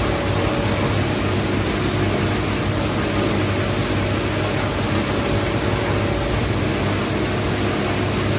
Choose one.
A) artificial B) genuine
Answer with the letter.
B